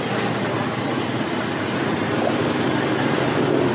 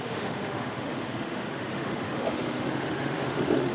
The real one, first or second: first